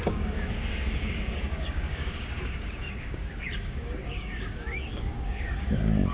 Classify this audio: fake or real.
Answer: fake